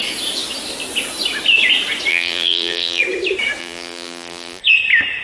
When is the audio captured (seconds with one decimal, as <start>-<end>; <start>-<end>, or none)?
0.0-2.1; 3.0-3.6; 4.6-5.2